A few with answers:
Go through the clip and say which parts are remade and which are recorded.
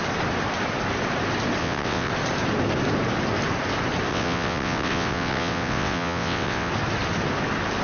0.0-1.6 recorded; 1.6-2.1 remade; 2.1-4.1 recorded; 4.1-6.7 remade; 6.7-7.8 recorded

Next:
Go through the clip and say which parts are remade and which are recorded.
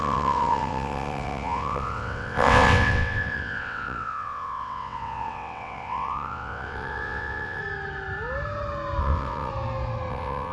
0.0-7.6 remade; 7.6-9.0 recorded; 9.0-9.5 remade; 9.5-10.1 recorded; 10.1-10.5 remade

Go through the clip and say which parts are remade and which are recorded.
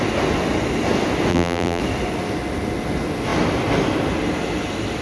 0.0-1.3 recorded; 1.3-1.8 remade; 1.8-5.0 recorded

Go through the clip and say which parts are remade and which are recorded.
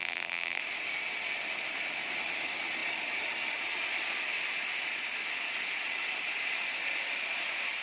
0.0-0.6 remade; 0.6-7.8 recorded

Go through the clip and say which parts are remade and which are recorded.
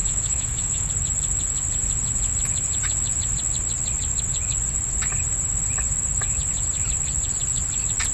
0.0-0.9 remade; 0.9-8.1 recorded